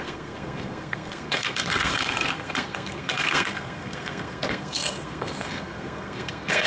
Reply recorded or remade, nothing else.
remade